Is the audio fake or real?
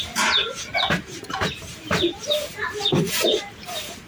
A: fake